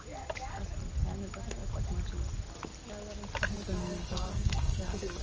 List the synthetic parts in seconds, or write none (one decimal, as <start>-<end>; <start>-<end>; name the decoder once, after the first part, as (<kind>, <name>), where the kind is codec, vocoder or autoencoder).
3.8-5.2 (codec, SNAC)